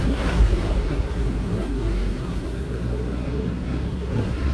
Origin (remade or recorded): remade